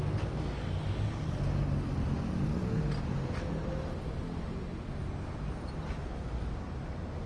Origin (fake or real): real